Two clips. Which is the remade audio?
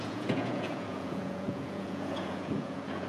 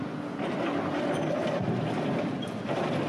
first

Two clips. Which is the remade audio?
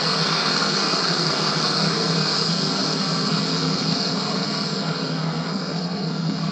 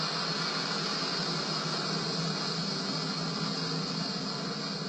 first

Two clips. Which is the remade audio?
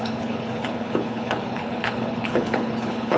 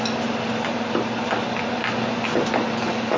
first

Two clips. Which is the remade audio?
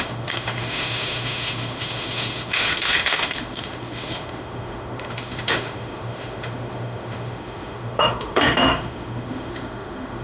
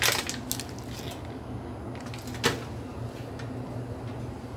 first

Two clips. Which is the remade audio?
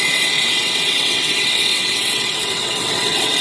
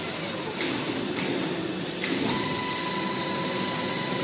first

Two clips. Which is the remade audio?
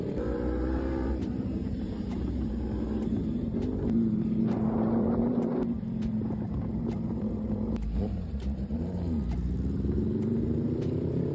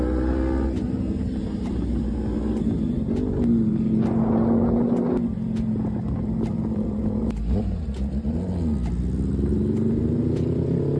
first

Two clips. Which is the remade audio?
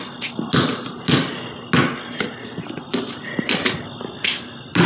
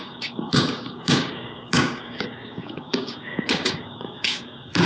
second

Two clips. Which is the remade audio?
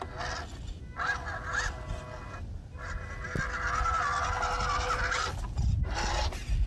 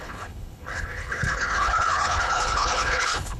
second